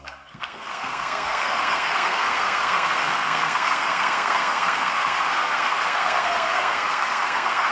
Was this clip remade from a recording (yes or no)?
yes